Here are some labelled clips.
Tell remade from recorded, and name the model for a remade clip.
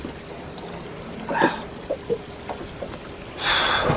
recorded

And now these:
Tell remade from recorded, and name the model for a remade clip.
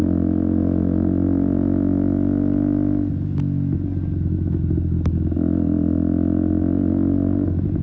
recorded